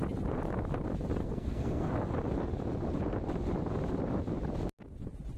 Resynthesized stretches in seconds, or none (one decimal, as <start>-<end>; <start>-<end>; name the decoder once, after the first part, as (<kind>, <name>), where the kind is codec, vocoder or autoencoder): 1.2-1.9 (codec, SNAC)